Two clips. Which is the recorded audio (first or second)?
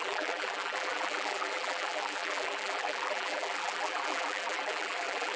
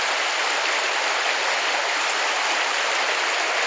second